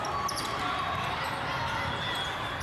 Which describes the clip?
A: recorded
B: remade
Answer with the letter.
A